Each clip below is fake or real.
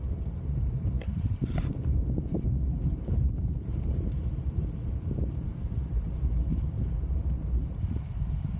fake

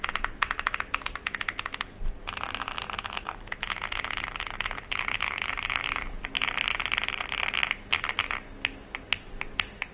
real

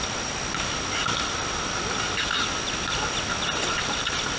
real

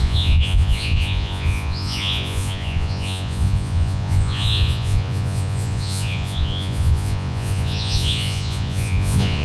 fake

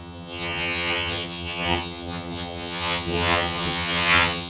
fake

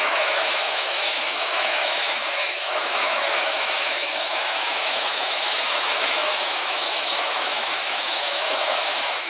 fake